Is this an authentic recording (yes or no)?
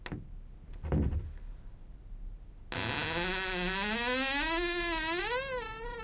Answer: yes